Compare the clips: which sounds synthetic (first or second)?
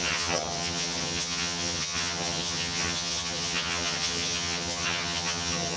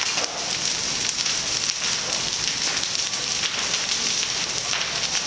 first